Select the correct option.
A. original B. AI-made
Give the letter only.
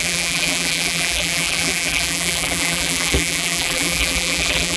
B